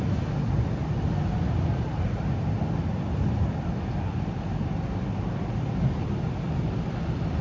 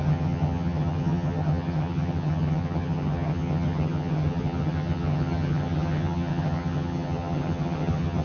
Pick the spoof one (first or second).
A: second